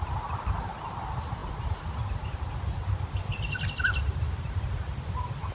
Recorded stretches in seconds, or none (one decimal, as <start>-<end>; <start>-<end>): 0.0-5.5